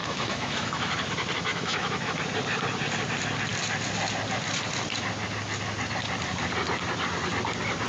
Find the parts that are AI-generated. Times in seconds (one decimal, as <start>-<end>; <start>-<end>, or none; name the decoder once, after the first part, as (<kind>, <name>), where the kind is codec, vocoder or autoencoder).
0.0-0.9 (autoencoder, DAC-VAE); 1.5-2.2